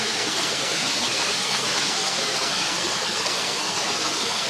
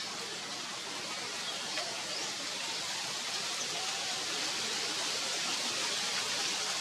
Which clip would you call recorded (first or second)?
second